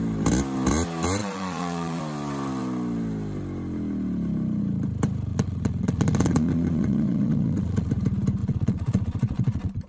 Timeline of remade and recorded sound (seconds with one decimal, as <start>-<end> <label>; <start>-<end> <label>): 0.0-1.2 recorded; 1.2-2.0 remade; 2.0-5.3 recorded; 5.3-7.9 remade; 7.9-8.4 recorded; 8.4-9.9 remade